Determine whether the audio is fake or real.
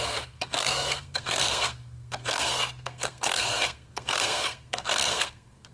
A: fake